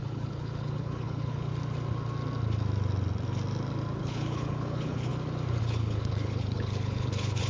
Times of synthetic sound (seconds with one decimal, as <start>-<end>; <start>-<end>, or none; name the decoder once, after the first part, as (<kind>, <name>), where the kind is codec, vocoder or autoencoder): 0.0-1.5 (codec, HILCodec); 4.0-5.1; 5.6-7.5